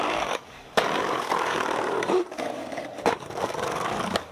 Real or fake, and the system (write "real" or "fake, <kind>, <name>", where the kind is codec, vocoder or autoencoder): fake, codec, DAC